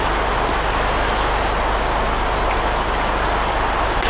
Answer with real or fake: real